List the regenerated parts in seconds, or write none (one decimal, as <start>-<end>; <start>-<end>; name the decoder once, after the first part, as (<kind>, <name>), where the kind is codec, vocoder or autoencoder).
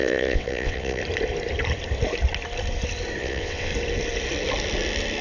0.0-1.0 (vocoder, WaveNeXt); 3.2-3.7